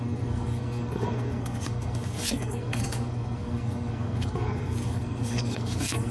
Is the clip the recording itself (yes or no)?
no